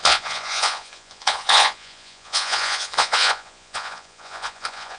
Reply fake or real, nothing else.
fake